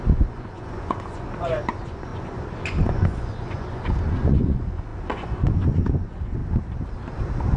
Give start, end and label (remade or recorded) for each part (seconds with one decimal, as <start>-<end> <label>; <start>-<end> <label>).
0.0-6.4 remade; 6.4-7.6 recorded